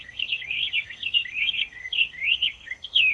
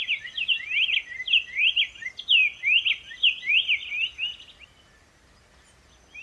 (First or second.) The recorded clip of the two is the second